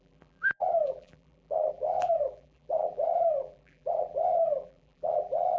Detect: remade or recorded remade